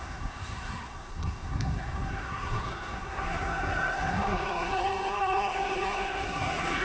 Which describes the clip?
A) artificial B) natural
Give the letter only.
A